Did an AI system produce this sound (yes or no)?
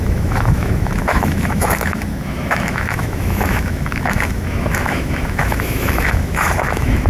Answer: yes